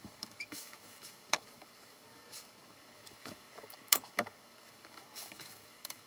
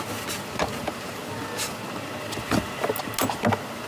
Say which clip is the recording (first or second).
second